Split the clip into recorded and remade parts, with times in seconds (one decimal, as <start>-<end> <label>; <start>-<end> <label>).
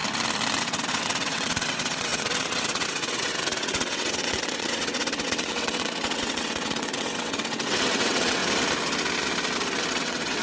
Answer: 0.0-0.6 recorded; 0.6-8.4 remade; 8.4-9.9 recorded; 9.9-10.4 remade